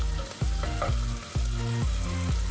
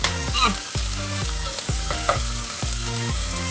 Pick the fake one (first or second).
second